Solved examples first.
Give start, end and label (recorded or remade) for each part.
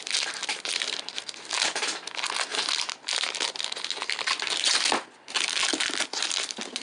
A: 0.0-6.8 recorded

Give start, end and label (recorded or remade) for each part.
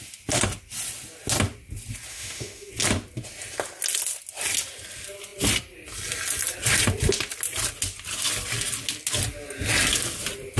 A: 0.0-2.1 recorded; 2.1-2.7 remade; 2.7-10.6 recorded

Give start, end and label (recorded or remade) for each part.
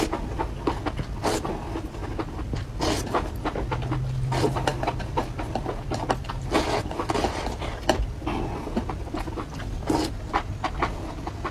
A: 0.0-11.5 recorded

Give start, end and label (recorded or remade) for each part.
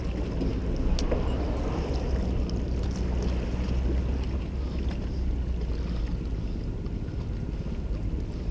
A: 0.0-8.5 recorded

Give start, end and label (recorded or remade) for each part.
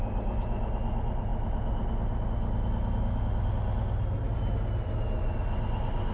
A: 0.0-6.1 recorded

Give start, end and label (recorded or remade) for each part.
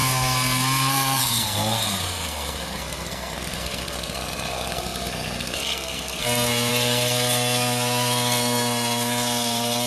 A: 0.0-9.9 remade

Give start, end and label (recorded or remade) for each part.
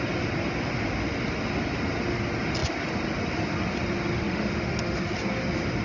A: 0.0-4.3 recorded; 4.3-5.0 remade; 5.0-5.8 recorded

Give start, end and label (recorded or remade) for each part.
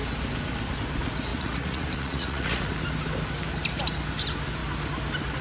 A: 0.0-1.3 recorded; 1.3-2.6 remade; 2.6-5.4 recorded